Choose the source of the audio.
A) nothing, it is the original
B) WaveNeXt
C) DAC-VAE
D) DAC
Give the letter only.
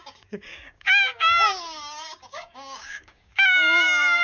D